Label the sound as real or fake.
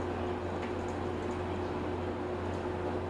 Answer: real